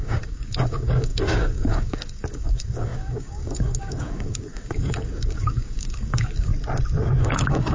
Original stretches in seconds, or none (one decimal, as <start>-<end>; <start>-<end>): 6.5-7.2